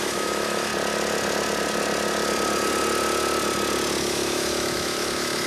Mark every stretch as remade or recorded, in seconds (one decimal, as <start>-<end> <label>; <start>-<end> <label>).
0.0-0.7 remade; 0.7-4.0 recorded; 4.0-5.5 remade